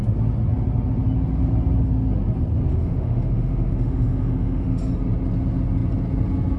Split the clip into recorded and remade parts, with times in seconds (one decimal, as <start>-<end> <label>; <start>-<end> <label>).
0.0-2.7 recorded; 2.7-4.9 remade; 4.9-6.6 recorded